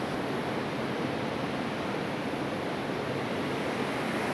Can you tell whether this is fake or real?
real